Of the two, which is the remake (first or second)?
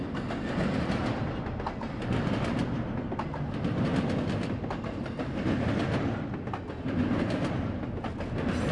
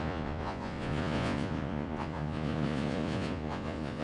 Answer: second